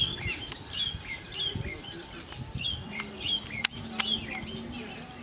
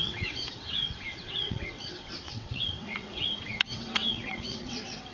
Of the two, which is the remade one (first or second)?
second